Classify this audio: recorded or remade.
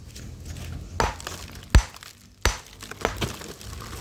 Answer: recorded